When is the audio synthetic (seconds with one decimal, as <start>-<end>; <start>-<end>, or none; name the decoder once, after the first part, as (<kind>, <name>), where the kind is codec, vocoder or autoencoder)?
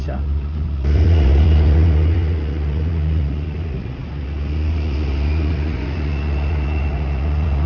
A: 0.0-7.7 (vocoder, Vocos)